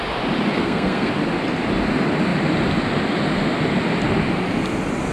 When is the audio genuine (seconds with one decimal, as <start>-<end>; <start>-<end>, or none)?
0.0-0.5; 1.1-5.1